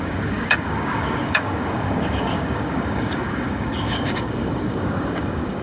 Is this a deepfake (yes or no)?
yes